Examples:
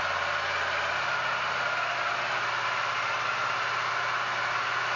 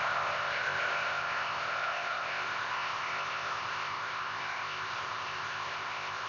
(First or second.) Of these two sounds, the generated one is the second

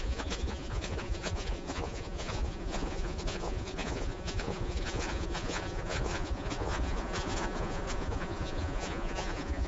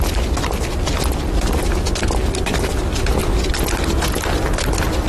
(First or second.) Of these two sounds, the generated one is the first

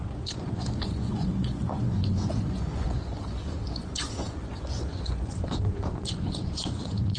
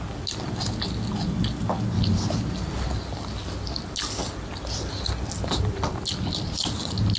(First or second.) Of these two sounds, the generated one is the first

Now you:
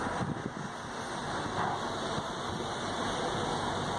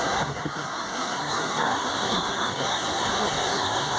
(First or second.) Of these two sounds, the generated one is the second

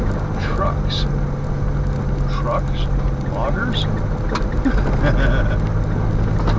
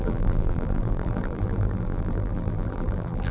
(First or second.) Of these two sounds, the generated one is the second